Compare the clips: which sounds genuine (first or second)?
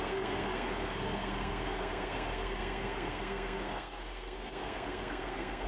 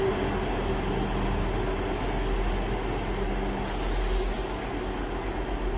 second